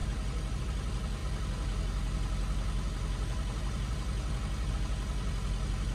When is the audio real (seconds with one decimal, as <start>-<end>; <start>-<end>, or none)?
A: 0.0-5.9